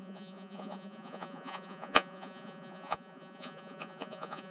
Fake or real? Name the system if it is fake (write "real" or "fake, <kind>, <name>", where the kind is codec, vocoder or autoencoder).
fake, vocoder, Vocos